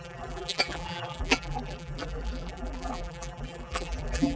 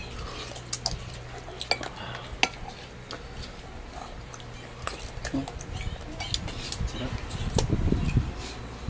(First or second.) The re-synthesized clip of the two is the first